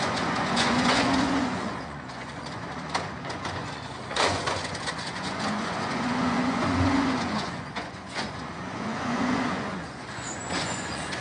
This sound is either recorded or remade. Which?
remade